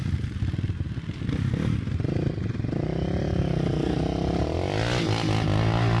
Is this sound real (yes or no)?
yes